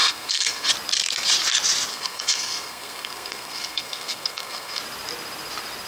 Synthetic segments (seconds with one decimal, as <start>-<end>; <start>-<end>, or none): 0.0-0.7; 1.9-4.8